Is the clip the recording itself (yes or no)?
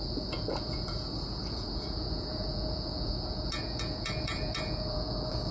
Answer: no